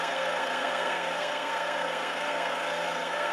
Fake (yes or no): yes